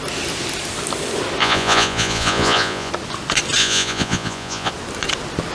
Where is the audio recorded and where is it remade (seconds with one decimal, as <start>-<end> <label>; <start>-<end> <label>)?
0.0-1.4 recorded; 1.4-2.9 remade; 2.9-3.6 recorded; 3.6-4.7 remade; 4.7-5.5 recorded